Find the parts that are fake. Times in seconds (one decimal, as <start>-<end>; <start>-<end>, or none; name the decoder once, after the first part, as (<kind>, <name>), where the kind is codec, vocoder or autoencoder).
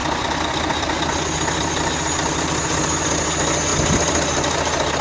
none